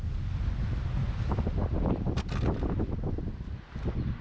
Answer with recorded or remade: recorded